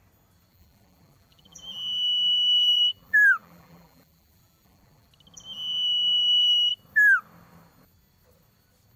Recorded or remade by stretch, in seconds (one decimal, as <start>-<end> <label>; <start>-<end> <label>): 0.0-0.5 recorded; 0.5-5.1 remade; 5.1-9.0 recorded

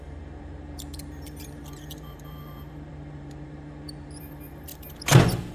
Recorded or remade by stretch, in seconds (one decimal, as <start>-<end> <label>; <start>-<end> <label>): 0.0-4.7 remade; 4.7-5.5 recorded

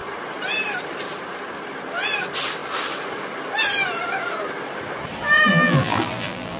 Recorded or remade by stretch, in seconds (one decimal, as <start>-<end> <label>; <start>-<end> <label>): 0.0-5.5 recorded; 5.5-6.6 remade

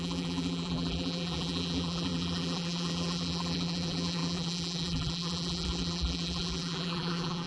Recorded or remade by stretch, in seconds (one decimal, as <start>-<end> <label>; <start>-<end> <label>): 0.0-7.5 remade

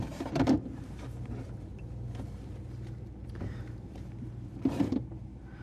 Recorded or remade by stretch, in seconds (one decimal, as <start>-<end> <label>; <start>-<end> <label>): 0.0-5.6 remade

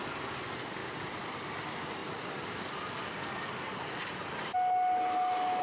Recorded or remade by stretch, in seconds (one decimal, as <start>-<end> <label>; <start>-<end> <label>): 0.0-0.8 recorded; 0.8-1.5 remade; 1.5-2.0 recorded; 2.0-3.7 remade; 3.7-5.6 recorded

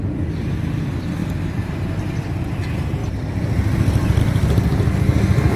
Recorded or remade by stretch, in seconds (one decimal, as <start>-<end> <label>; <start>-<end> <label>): 0.0-5.6 recorded